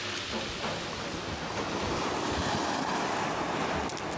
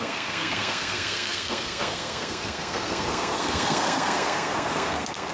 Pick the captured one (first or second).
first